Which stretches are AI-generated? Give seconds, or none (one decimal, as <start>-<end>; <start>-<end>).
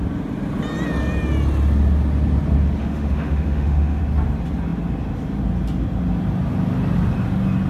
2.8-4.0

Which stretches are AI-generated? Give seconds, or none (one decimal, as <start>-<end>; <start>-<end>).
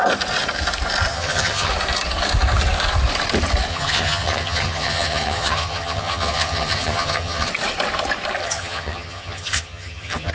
1.1-1.7; 3.7-7.5; 8.4-10.3